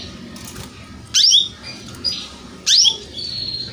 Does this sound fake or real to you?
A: real